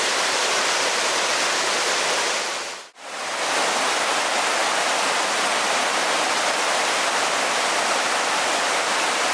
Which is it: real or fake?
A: real